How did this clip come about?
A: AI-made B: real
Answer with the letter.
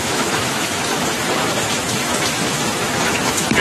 A